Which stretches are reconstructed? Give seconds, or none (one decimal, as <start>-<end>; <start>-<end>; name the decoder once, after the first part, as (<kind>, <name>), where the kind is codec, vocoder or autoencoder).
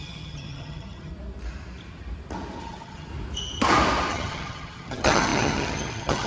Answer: 0.0-1.1 (vocoder, HiFi-GAN); 2.6-3.1; 4.1-6.3